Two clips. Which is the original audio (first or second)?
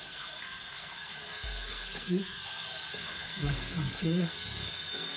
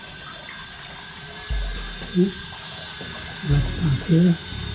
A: second